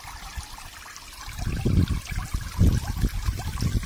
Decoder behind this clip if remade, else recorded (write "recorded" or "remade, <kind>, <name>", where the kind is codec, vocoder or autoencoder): recorded